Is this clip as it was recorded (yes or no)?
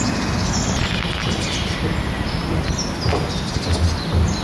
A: yes